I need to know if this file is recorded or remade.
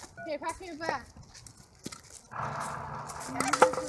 recorded